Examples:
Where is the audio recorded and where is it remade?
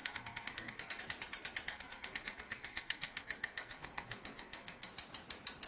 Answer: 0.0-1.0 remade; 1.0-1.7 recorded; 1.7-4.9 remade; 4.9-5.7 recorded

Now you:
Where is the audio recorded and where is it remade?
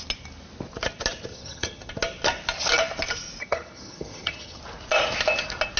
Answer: 0.0-1.3 recorded; 1.3-1.9 remade; 1.9-3.4 recorded; 3.4-4.6 remade; 4.6-5.8 recorded